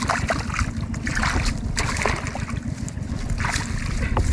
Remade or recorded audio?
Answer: recorded